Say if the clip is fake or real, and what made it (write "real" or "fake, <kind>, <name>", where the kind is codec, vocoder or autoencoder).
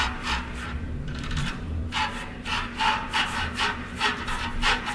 fake, vocoder, BigVGAN v2